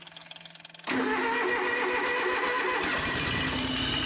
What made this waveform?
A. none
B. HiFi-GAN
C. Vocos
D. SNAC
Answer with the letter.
A